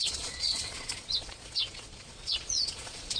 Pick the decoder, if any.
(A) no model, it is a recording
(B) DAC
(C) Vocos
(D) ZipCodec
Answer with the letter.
C